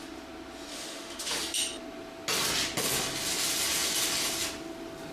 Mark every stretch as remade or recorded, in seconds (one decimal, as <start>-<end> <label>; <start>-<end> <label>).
0.0-0.7 recorded; 0.7-1.4 remade; 1.4-5.1 recorded